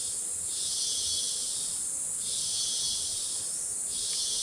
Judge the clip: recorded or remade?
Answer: recorded